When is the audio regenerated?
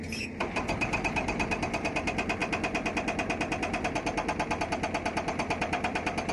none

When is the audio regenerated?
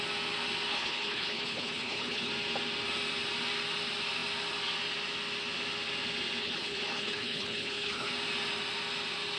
0.7-2.3 (codec, HILCodec); 6.4-8.1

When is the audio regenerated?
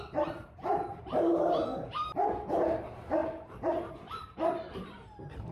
0.0-1.7 (vocoder, BigVGAN v2); 2.5-5.5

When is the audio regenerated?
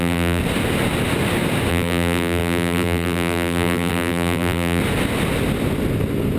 0.0-0.4 (vocoder, BigVGAN v2); 1.7-4.8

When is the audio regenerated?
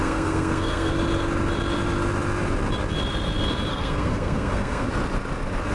0.0-0.9 (codec, SNAC); 3.7-4.9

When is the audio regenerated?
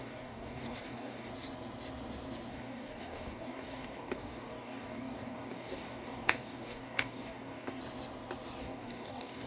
0.0-1.3 (codec, DAC); 2.5-7.8; 8.6-9.5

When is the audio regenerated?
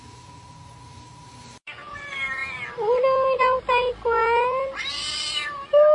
none